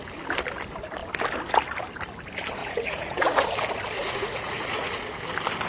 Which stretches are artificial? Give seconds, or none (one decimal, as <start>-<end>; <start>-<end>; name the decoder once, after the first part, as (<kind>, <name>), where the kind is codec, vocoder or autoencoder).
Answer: 2.6-3.4 (vocoder, Vocos); 4.0-5.0